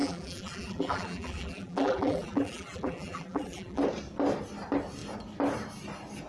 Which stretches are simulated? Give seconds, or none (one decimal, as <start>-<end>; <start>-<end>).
0.0-3.8